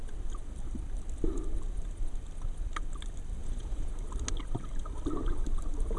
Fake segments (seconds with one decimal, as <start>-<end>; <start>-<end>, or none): 3.4-3.9